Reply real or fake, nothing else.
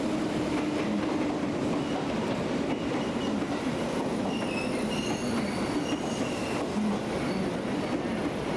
real